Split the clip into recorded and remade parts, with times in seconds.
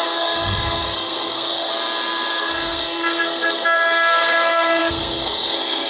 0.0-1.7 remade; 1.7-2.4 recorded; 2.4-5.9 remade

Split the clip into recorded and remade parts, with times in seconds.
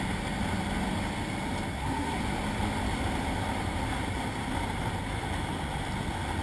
0.0-1.7 recorded; 1.7-2.2 remade; 2.2-6.4 recorded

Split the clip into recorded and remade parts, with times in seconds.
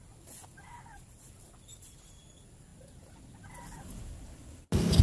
0.0-5.0 recorded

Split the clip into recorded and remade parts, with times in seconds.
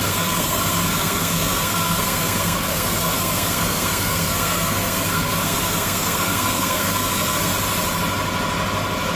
0.0-7.5 remade; 7.5-9.2 recorded